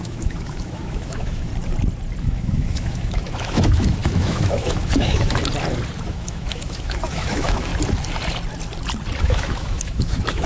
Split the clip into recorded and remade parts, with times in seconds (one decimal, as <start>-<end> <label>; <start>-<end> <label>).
0.0-1.5 remade; 1.5-2.2 recorded; 2.2-5.4 remade; 5.4-6.1 recorded; 6.1-7.7 remade; 7.7-9.2 recorded; 9.2-10.5 remade